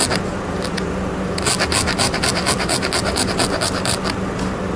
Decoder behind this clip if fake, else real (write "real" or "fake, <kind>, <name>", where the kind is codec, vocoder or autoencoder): real